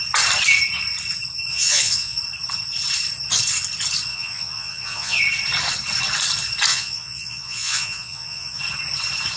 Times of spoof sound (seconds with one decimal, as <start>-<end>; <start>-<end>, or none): 1.5-2.2; 4.1-5.2; 6.7-8.6